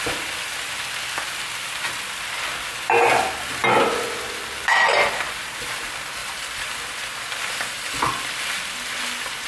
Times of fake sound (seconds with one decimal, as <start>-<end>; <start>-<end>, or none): 6.2-9.5